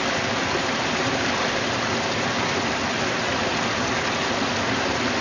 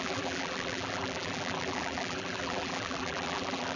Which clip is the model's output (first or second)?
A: second